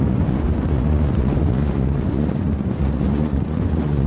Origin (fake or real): fake